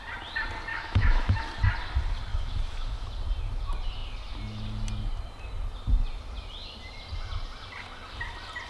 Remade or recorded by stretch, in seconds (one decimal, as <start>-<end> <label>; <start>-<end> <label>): 0.0-0.7 recorded; 0.7-1.4 remade; 1.4-2.3 recorded; 2.3-3.1 remade; 3.1-8.7 recorded